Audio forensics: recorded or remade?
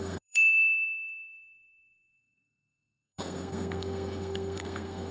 remade